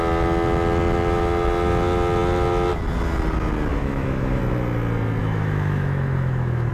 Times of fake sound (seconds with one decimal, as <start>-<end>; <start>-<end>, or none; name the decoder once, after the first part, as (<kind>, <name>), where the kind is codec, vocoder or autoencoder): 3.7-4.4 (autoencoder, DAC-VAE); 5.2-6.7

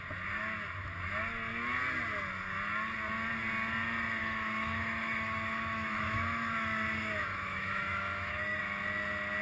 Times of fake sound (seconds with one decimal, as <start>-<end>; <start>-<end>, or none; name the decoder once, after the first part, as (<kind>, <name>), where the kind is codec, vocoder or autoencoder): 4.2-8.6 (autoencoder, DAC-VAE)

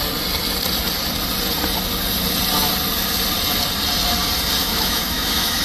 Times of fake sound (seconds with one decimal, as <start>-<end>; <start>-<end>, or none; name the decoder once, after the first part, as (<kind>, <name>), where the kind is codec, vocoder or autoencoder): 4.6-5.6 (autoencoder, DAC-VAE)